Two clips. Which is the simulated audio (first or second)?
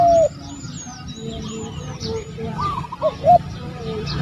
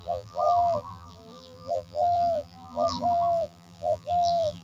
second